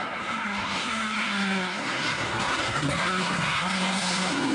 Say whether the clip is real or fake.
fake